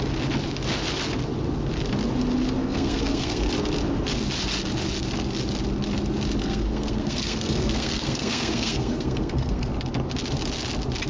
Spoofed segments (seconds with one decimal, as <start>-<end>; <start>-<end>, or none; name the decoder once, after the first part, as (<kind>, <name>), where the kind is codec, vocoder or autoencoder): 2.6-3.5 (codec, SNAC); 6.4-9.7